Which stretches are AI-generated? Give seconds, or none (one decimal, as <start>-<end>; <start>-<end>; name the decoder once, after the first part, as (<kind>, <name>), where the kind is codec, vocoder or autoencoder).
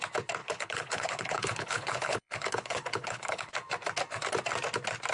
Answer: 0.4-3.5 (codec, HILCodec)